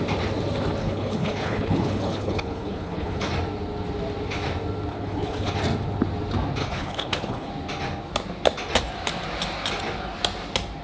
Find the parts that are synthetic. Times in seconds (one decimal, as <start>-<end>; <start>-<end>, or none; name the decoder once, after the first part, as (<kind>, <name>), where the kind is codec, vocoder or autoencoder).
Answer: 0.8-3.3 (codec, HILCodec); 4.9-5.5; 6.6-7.5